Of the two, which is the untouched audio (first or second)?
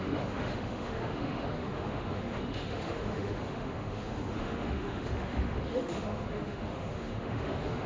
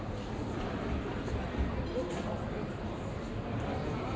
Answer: second